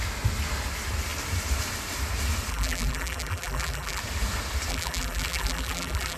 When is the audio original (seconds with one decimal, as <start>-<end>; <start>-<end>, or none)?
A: 0.0-2.5; 4.0-4.7